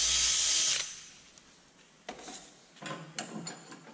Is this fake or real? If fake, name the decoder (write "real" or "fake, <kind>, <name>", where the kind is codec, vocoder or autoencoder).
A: real